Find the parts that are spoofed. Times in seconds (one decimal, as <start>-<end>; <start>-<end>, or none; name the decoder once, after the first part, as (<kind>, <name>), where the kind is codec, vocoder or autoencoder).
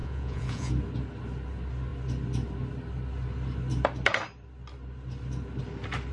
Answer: 0.0-0.7 (vocoder, Vocos)